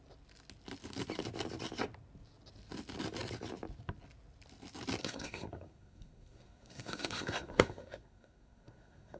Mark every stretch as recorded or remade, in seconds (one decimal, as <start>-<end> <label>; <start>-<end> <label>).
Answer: 0.0-5.0 recorded; 5.0-9.2 remade